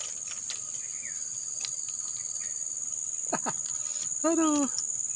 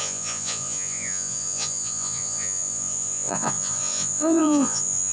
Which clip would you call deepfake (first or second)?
second